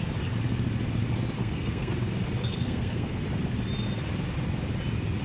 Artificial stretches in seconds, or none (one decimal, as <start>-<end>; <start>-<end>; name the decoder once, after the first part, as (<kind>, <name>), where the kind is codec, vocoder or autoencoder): 1.4-1.9 (codec, SNAC); 2.4-3.2